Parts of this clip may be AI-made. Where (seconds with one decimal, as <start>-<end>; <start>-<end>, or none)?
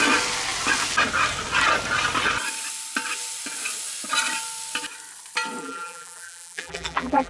5.6-7.3